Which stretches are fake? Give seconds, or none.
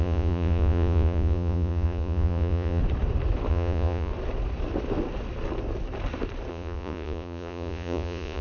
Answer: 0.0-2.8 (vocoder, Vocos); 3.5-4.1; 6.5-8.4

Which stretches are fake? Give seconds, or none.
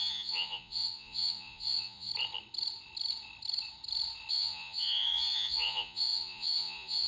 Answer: 0.0-2.1 (vocoder, Vocos); 4.3-7.1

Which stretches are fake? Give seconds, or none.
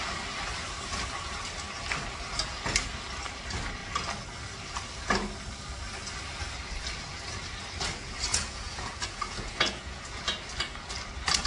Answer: 8.3-10.2 (vocoder, Vocos)